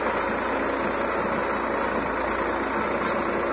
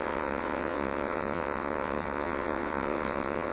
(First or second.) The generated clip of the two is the second